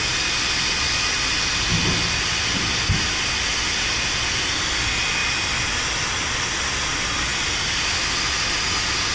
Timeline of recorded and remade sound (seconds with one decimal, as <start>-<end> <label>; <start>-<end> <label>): 0.0-9.1 recorded

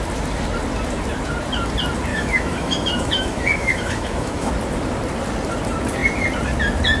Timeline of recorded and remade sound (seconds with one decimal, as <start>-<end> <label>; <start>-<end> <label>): 0.0-2.1 recorded; 2.1-4.5 remade; 4.5-7.0 recorded

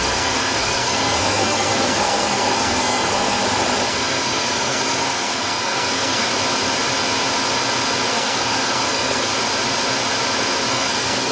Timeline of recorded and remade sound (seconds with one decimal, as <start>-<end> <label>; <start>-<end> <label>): 0.0-3.4 remade; 3.4-3.9 recorded; 3.9-6.3 remade; 6.3-8.1 recorded; 8.1-9.3 remade; 9.3-10.7 recorded; 10.7-11.3 remade

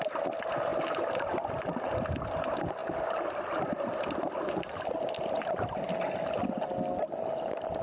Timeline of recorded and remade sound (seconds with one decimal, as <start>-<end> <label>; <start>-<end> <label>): 0.0-2.8 recorded; 2.8-5.8 remade; 5.8-7.8 recorded

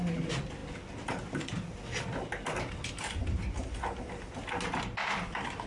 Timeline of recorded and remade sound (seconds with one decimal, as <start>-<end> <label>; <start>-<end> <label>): 0.0-5.7 recorded

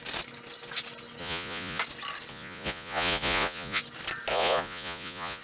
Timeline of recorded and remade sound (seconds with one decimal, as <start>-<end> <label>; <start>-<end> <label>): 0.0-1.2 recorded; 1.2-1.8 remade; 1.8-2.3 recorded; 2.3-3.8 remade; 3.8-4.3 recorded; 4.3-5.4 remade

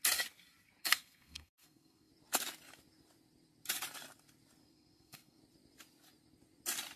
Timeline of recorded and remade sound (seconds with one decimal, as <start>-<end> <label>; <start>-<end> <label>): 0.0-0.8 recorded; 0.8-2.1 remade; 2.1-4.6 recorded; 4.6-5.4 remade; 5.4-7.0 recorded